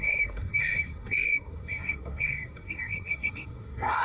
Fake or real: fake